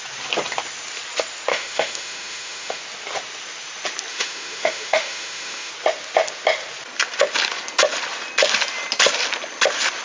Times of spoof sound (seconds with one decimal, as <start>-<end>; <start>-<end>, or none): 1.5-2.8; 4.1-5.7